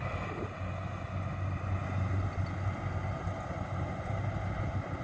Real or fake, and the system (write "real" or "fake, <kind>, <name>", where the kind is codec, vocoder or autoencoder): real